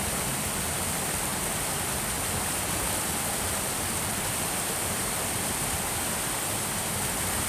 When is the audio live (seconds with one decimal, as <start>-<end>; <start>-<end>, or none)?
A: 0.0-7.5